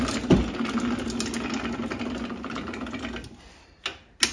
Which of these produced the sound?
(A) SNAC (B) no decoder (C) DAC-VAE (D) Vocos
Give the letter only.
B